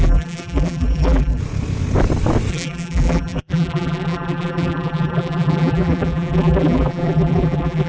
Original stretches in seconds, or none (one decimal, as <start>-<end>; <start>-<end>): 1.4-2.5